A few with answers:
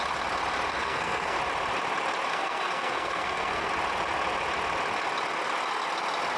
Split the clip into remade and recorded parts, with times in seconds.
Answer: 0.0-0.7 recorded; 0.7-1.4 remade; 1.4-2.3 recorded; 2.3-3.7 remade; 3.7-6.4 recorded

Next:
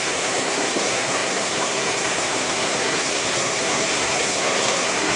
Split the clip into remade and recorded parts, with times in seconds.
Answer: 0.0-5.2 remade

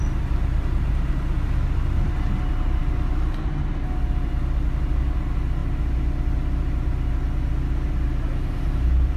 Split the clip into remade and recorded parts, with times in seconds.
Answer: 0.0-9.2 recorded

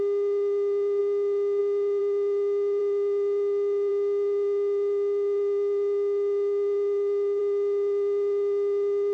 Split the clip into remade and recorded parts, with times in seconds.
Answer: 0.0-9.1 recorded

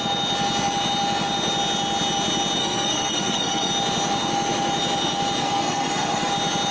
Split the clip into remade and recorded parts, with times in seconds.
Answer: 0.0-2.6 recorded; 2.6-3.7 remade; 3.7-5.4 recorded; 5.4-6.3 remade; 6.3-6.7 recorded

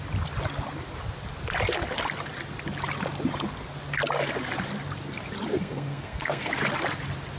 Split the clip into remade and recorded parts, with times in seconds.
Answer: 0.0-5.5 recorded; 5.5-6.5 remade; 6.5-7.4 recorded

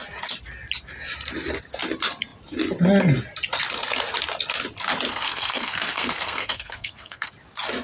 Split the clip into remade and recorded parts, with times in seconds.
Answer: 0.0-5.1 recorded; 5.1-7.3 remade; 7.3-7.8 recorded

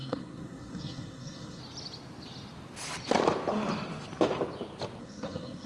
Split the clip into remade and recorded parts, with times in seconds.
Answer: 0.0-1.6 remade; 1.6-5.0 recorded; 5.0-5.7 remade